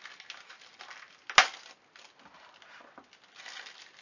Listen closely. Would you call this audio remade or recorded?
recorded